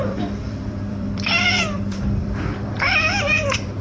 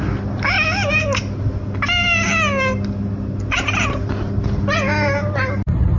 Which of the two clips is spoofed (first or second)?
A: first